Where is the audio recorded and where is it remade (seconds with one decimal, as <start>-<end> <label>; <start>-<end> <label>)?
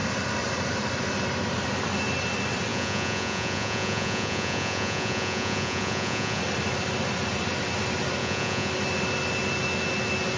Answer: 0.0-2.7 recorded; 2.7-6.4 remade; 6.4-8.2 recorded; 8.2-8.7 remade; 8.7-10.4 recorded